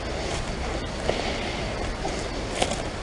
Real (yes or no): yes